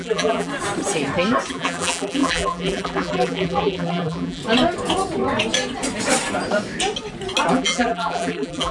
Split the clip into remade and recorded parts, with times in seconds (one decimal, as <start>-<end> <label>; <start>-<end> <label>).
0.0-0.5 remade; 0.5-1.5 recorded; 1.5-4.4 remade; 4.4-7.5 recorded; 7.5-8.7 remade

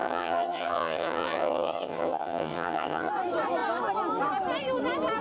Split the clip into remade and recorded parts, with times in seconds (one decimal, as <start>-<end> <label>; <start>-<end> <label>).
0.0-3.1 remade; 3.1-5.2 recorded